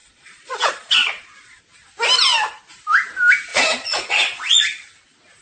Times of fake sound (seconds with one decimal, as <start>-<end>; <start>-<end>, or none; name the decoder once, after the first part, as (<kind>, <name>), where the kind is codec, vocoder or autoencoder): 0.0-1.6 (vocoder, Vocos); 3.5-4.6